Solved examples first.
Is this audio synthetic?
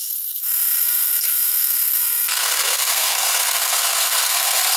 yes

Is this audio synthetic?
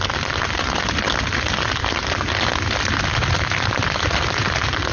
no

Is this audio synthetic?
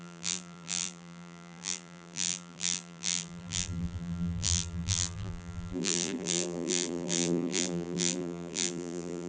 yes